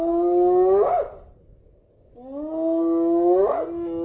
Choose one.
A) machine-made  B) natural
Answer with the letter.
B